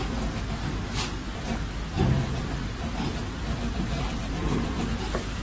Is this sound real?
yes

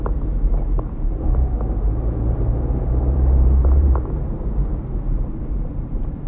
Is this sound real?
no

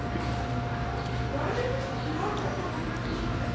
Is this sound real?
yes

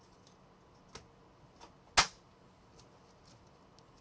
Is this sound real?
yes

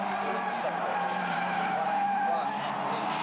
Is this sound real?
no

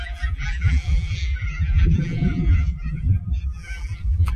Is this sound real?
no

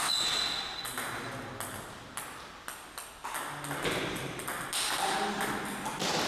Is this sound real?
yes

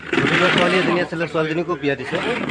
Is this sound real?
no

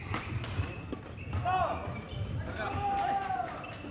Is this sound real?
yes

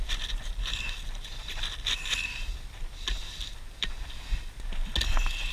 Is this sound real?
yes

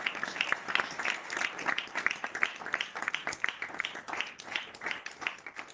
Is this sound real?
no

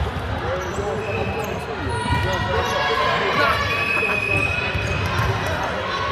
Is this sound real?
yes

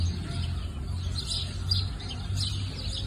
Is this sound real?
yes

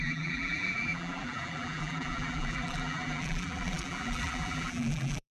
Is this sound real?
no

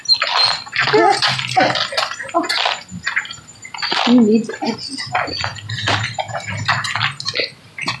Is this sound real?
yes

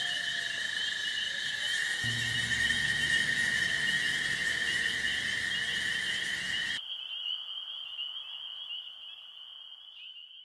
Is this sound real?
yes